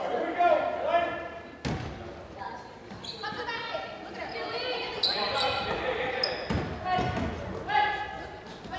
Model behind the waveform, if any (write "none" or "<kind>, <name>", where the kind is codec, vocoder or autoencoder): none